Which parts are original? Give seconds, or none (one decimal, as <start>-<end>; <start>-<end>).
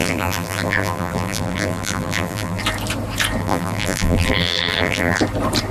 2.6-3.4; 5.2-5.7